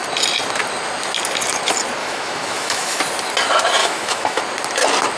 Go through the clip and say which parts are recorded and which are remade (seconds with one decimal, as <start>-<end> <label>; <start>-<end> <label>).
0.0-2.0 recorded; 2.0-3.0 remade; 3.0-3.8 recorded; 3.8-4.4 remade; 4.4-5.2 recorded